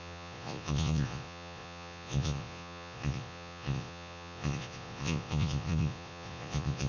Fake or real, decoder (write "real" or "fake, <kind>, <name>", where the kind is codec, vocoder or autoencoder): fake, vocoder, Vocos